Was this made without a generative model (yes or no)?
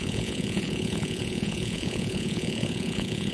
no